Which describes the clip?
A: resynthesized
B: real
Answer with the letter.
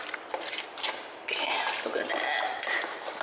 B